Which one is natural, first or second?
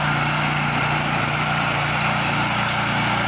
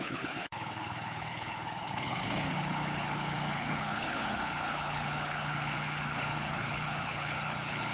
first